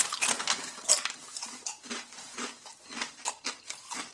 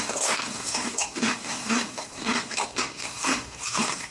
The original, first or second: first